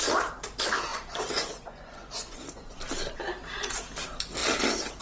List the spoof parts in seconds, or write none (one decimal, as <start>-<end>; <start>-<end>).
0.9-2.8